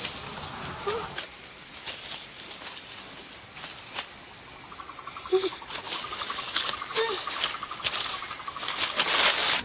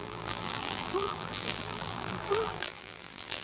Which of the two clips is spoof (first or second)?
second